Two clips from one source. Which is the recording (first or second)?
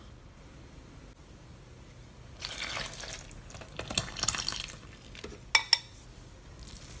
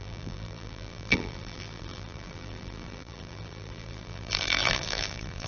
first